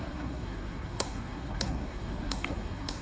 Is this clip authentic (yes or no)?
no